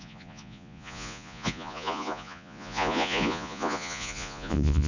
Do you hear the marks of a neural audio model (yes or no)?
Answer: yes